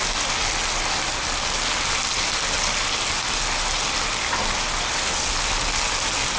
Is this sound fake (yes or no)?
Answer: no